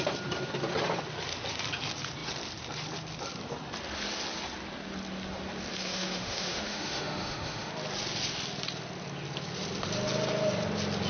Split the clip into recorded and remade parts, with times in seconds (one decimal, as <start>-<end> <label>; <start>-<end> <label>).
0.0-5.7 recorded; 5.7-7.7 remade; 7.7-11.1 recorded